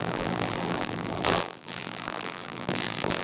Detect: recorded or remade remade